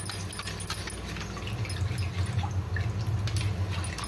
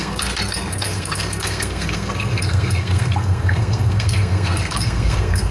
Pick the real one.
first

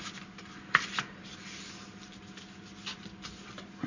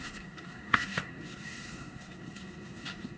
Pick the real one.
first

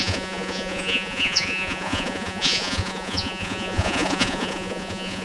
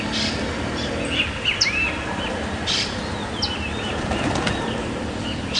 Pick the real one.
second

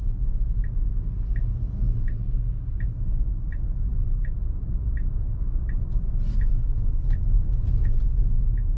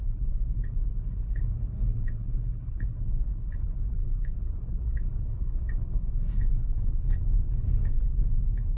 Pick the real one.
first